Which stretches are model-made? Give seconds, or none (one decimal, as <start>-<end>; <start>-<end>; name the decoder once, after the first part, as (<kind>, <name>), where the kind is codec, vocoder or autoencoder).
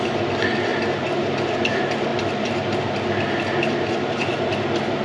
none